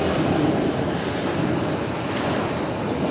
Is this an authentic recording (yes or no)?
yes